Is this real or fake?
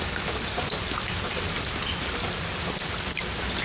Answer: real